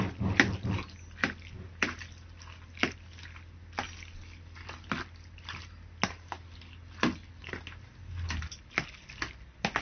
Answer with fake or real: real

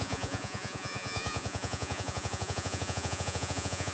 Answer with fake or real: fake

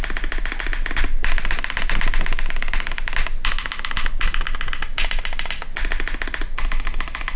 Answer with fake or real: real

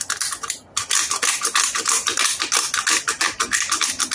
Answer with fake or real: real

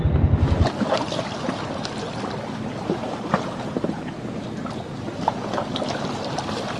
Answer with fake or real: real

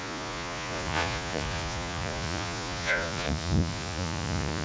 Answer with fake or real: fake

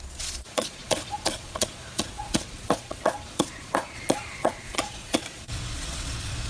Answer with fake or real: fake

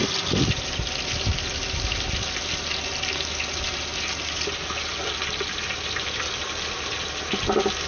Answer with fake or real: real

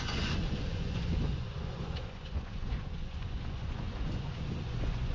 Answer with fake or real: fake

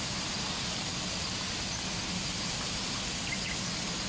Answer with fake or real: real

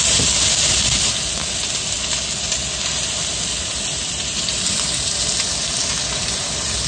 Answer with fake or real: real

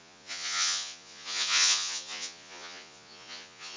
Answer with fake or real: fake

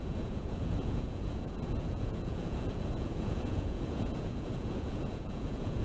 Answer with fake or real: fake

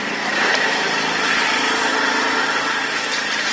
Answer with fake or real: real